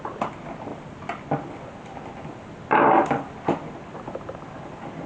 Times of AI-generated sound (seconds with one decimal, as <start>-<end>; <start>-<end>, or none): none